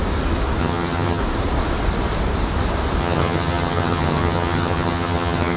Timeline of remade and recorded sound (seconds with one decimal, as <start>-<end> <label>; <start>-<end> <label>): 0.0-0.6 recorded; 0.6-1.2 remade; 1.2-3.0 recorded; 3.0-5.6 remade